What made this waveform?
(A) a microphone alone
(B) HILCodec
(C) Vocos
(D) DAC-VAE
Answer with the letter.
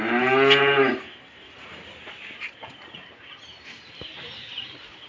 A